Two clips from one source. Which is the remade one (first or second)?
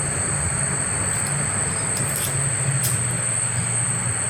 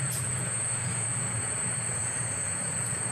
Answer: second